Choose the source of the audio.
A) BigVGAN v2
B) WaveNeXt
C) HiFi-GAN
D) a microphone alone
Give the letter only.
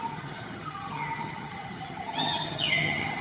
C